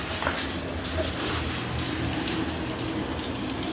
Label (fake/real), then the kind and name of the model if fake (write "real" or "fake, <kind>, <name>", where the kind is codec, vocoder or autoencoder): real